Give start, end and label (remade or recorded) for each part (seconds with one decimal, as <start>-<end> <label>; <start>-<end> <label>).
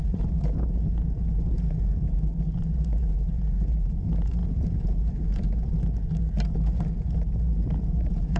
0.0-2.3 remade; 2.3-3.0 recorded; 3.0-5.7 remade; 5.7-7.9 recorded; 7.9-8.4 remade